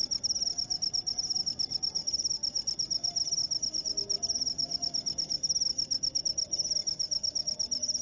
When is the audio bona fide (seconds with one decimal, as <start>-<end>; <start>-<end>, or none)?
0.0-8.0